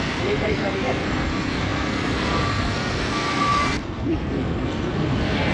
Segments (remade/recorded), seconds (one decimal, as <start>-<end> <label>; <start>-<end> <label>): 0.0-5.5 remade